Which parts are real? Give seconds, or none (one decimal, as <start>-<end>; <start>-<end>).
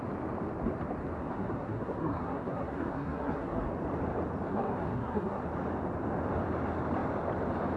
0.0-1.2; 3.6-4.5; 5.4-7.8